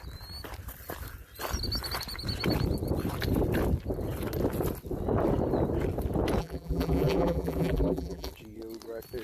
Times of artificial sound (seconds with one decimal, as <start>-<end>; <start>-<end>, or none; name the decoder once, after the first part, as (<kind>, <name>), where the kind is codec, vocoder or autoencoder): 6.4-8.3 (vocoder, BigVGAN v2)